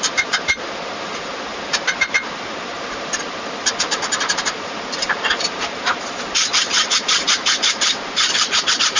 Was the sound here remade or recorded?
remade